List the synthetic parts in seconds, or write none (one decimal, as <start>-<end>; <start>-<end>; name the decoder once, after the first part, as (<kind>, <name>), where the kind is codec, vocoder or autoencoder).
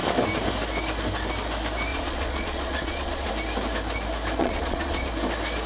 1.9-3.3 (vocoder, Vocos); 4.4-5.1